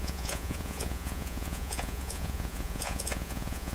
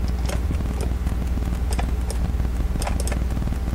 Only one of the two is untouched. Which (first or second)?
second